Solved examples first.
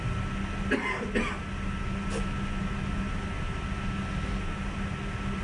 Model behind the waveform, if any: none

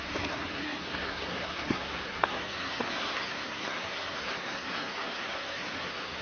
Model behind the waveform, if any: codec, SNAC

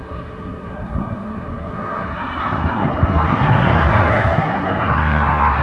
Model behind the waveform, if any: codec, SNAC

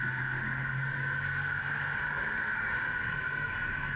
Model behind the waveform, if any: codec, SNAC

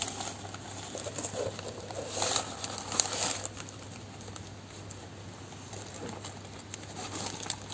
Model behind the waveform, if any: none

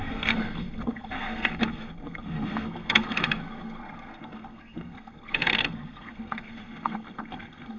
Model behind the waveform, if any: codec, SNAC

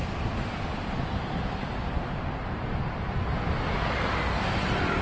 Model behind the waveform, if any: none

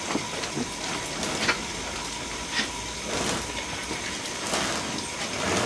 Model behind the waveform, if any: none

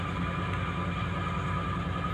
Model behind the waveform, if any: none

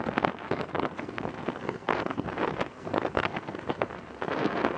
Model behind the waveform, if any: codec, SNAC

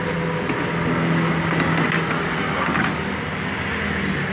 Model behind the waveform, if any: none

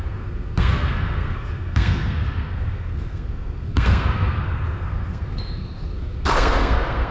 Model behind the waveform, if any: codec, SNAC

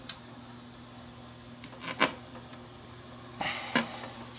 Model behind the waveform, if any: none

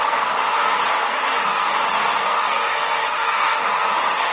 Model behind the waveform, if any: codec, SNAC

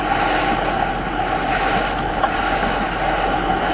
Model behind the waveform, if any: none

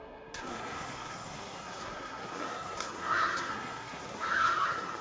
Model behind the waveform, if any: codec, SNAC